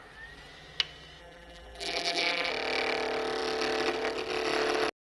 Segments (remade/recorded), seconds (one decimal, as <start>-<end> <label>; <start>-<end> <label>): 0.0-1.2 recorded; 1.2-2.5 remade; 2.5-5.2 recorded